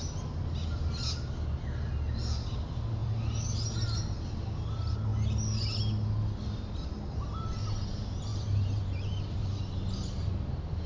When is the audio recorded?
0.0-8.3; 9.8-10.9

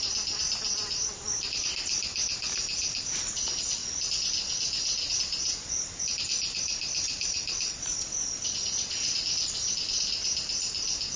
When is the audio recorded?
3.8-5.2

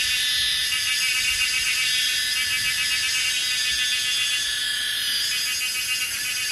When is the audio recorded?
3.4-6.0

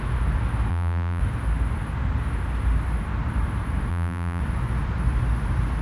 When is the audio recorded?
0.0-0.7; 1.2-3.9; 4.4-5.8

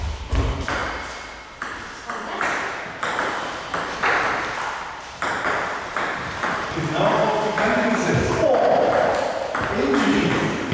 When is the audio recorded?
0.8-4.9; 7.2-8.1

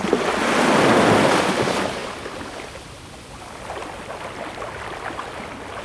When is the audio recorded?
0.0-5.8

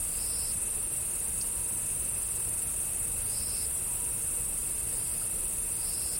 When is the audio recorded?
0.0-5.1

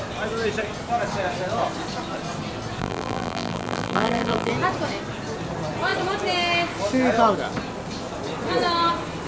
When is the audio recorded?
0.0-2.8; 4.5-9.3